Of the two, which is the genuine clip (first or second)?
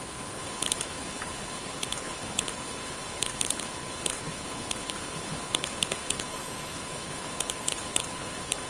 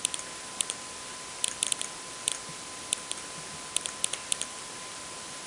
second